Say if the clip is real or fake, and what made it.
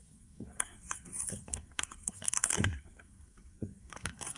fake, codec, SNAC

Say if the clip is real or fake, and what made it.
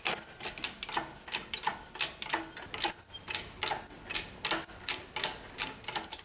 real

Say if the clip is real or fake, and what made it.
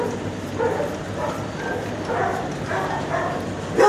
real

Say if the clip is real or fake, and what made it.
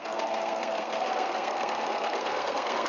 fake, codec, SNAC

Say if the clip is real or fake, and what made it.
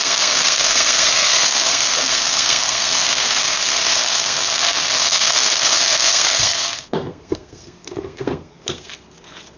fake, codec, SNAC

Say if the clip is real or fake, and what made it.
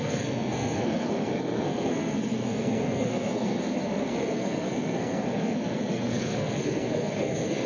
fake, codec, SNAC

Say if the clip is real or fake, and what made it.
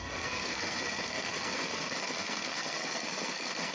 fake, codec, SNAC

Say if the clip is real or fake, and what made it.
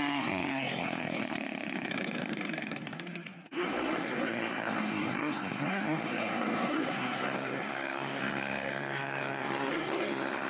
fake, codec, SNAC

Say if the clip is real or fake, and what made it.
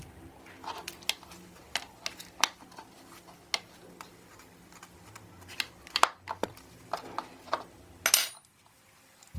real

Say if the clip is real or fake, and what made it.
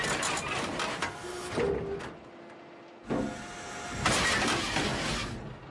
real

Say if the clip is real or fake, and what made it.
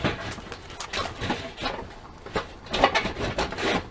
real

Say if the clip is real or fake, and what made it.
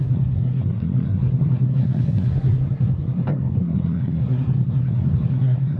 fake, codec, SNAC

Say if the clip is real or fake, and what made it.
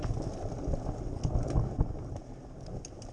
real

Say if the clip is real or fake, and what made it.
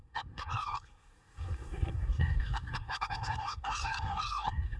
fake, codec, SNAC